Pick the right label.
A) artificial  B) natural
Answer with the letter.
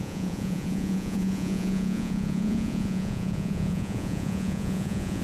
A